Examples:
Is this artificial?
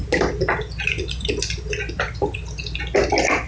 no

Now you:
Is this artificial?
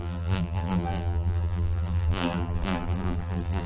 yes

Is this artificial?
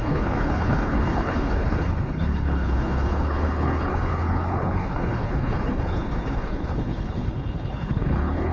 yes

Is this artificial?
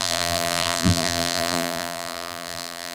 yes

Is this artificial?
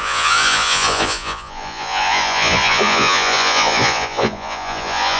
yes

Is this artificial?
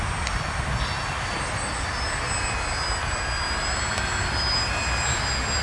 no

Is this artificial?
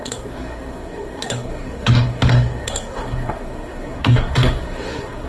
yes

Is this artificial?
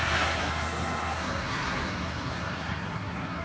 yes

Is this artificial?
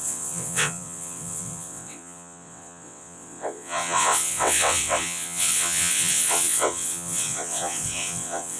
yes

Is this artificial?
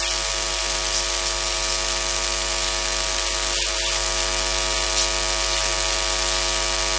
no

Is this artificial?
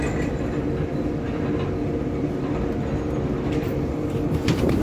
no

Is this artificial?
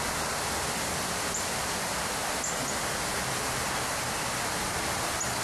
yes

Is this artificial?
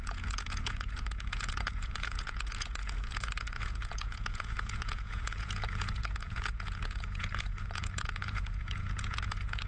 yes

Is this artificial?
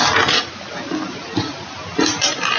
no